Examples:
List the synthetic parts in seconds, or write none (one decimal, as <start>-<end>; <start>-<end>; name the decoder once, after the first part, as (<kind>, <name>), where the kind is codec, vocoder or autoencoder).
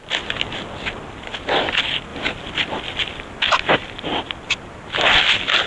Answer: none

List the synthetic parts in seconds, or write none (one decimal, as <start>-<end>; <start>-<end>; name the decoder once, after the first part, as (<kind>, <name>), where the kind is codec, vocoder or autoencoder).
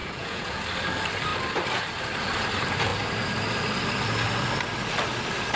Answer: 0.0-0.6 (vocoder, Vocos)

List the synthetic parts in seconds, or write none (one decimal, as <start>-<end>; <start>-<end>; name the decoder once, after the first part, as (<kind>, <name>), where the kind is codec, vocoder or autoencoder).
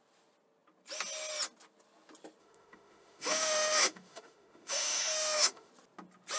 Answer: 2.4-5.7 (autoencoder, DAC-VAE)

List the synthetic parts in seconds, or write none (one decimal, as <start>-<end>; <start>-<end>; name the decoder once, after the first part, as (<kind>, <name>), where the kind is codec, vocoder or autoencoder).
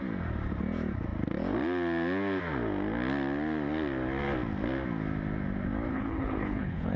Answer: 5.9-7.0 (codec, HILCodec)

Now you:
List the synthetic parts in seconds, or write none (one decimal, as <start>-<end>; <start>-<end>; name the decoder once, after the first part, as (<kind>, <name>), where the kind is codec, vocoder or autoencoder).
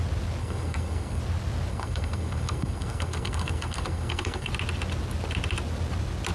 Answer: 0.4-1.2 (codec, SNAC); 1.7-4.5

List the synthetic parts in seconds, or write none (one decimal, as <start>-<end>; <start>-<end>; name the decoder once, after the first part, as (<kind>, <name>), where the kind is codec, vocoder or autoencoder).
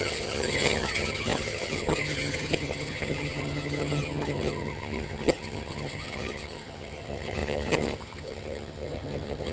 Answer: 0.0-9.5 (vocoder, HiFi-GAN)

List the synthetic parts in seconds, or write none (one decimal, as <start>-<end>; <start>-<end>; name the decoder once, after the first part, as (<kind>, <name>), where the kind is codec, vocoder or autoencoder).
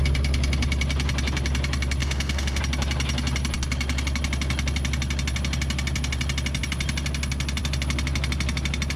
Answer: 2.0-2.6 (autoencoder, DAC-VAE)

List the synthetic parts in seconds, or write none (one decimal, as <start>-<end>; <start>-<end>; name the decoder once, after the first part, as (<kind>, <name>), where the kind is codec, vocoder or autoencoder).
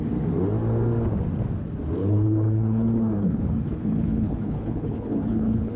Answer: 2.0-5.8 (codec, HILCodec)